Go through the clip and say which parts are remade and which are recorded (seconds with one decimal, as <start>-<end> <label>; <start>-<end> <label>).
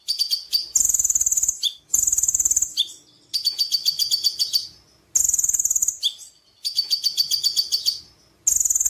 0.0-0.6 recorded; 0.6-4.1 remade; 4.1-8.9 recorded